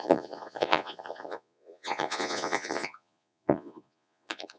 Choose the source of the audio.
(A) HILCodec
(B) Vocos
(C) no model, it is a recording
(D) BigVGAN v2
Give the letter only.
B